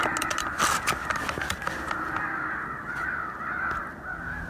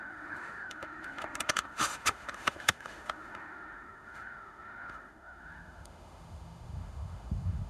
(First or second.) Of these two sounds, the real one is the first